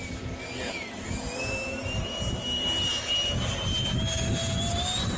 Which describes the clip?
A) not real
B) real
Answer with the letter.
B